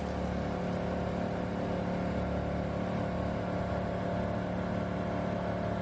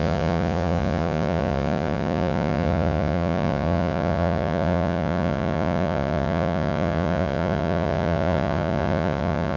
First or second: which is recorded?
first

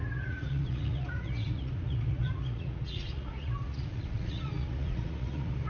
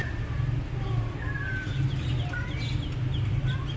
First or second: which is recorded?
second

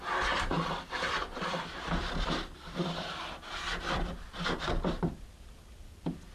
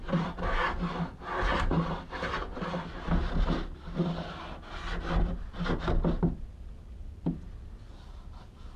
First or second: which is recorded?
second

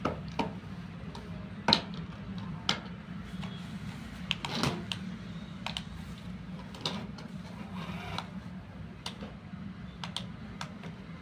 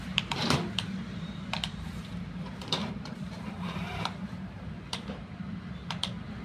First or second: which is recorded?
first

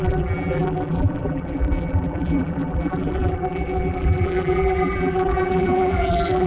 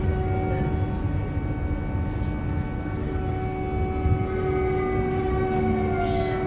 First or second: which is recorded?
second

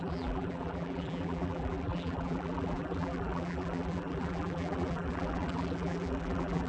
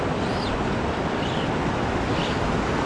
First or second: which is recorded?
second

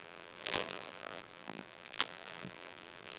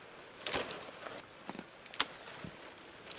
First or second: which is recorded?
second